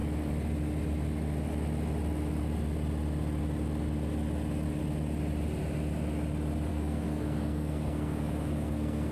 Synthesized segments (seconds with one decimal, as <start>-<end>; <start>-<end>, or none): 6.7-9.1